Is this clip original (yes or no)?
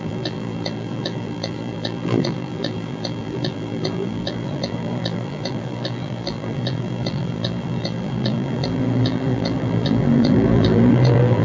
no